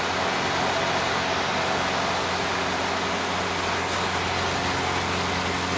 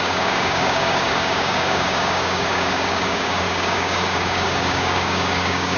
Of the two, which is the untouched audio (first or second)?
first